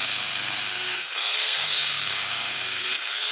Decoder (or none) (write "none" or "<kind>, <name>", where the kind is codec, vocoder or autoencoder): codec, SNAC